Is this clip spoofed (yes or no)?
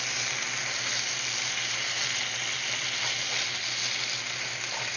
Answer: no